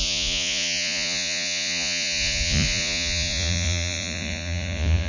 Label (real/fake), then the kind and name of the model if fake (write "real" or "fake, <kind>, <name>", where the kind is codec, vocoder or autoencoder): fake, vocoder, Vocos